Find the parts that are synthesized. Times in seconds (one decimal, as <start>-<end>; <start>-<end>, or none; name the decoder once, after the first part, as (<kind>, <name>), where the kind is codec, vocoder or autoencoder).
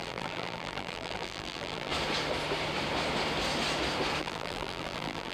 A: 0.0-1.9 (vocoder, BigVGAN v2); 4.2-5.3